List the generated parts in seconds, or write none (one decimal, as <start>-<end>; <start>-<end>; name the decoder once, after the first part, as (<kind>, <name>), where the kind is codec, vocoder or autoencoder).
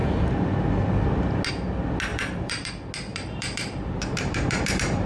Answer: 2.1-2.7 (vocoder, BigVGAN v2); 3.1-5.1